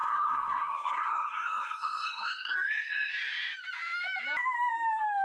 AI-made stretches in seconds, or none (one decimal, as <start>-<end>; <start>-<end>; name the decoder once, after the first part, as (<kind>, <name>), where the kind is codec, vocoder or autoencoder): 0.0-3.1 (codec, SNAC)